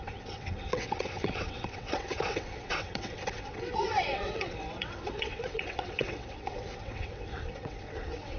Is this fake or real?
fake